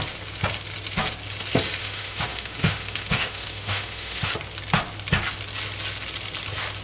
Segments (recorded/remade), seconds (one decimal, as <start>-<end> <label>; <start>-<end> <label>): 0.0-1.8 recorded; 1.8-4.3 remade; 4.3-6.8 recorded